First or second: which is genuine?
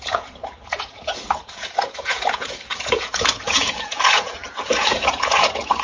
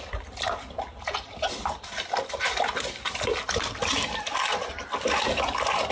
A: second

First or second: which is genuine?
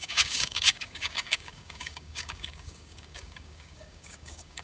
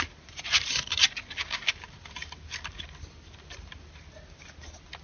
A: second